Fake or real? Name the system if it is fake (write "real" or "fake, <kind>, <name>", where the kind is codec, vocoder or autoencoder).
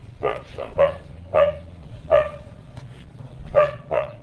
fake, vocoder, Vocos